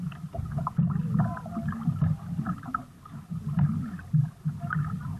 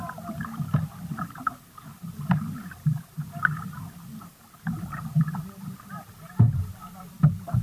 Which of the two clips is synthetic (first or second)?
second